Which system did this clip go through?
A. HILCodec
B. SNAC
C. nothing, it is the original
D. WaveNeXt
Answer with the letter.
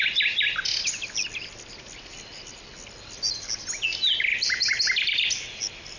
C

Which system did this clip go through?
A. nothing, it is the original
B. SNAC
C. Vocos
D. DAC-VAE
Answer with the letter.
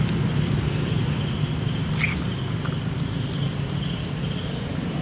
A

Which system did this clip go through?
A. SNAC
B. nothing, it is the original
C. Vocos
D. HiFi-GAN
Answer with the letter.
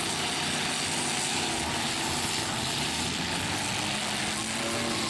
B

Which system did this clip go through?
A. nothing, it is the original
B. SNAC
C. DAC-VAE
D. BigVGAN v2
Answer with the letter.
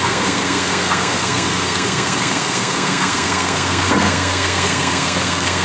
B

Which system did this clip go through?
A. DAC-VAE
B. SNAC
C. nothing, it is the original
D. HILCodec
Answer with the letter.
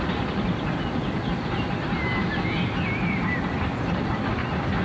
C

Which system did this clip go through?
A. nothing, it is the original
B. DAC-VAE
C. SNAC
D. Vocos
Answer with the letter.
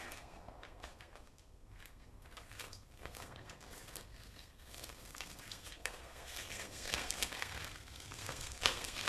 C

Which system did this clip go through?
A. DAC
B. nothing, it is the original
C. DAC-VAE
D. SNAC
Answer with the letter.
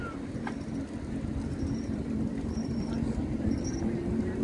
B